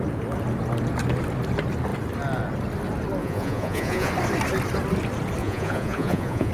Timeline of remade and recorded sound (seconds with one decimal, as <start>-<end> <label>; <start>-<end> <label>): 0.0-3.2 recorded; 3.2-4.1 remade; 4.1-5.4 recorded; 5.4-6.5 remade